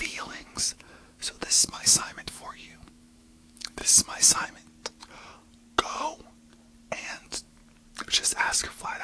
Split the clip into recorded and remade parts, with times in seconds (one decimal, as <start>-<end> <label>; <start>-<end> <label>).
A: 0.0-3.8 remade; 3.8-7.0 recorded; 7.0-7.6 remade; 7.6-9.0 recorded